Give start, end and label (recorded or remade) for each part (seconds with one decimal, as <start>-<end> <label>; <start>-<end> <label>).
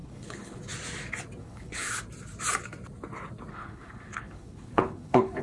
0.0-0.6 remade; 0.6-1.4 recorded; 1.4-1.9 remade; 1.9-3.5 recorded; 3.5-5.4 remade